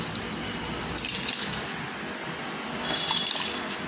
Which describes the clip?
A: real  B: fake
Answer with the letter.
A